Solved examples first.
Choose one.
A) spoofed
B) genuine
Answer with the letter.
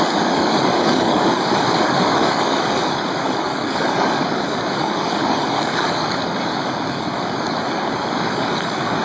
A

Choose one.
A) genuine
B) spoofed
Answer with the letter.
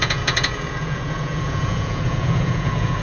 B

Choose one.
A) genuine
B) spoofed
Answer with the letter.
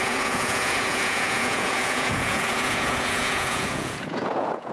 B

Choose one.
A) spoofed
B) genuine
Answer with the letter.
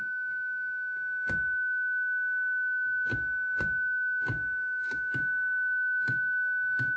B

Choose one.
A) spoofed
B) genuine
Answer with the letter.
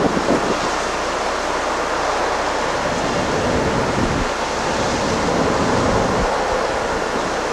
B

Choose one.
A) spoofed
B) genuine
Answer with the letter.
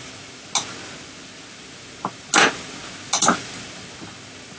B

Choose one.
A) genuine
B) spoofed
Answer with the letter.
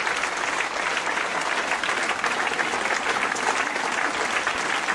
A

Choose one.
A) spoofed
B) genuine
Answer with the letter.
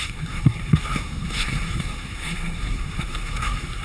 A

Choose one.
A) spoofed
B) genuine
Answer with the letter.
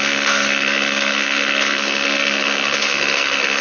A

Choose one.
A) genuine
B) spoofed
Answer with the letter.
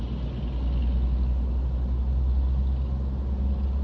A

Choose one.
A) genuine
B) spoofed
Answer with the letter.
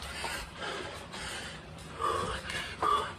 A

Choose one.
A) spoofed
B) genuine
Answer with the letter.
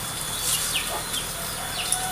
A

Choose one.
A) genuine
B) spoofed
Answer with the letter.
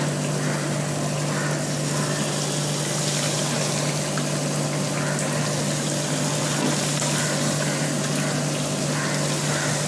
A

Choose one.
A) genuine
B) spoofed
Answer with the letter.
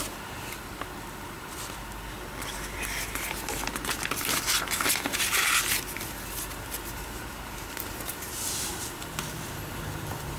A